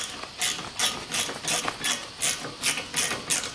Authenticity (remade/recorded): recorded